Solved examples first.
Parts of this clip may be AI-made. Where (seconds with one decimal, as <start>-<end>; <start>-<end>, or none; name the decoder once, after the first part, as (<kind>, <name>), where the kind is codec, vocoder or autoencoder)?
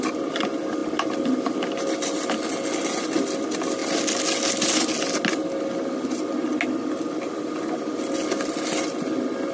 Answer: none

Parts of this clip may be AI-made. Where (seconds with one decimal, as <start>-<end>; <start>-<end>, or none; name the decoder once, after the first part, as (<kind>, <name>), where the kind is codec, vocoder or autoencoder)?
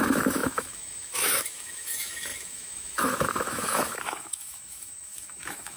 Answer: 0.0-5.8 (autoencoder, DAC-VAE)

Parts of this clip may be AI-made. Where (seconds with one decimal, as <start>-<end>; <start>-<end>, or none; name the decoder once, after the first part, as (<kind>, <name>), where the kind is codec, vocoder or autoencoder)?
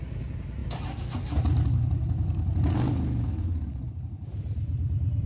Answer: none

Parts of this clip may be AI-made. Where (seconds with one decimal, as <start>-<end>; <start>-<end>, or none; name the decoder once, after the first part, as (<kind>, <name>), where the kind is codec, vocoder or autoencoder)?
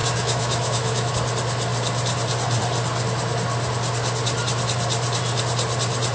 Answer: 0.0-1.1 (autoencoder, DAC-VAE)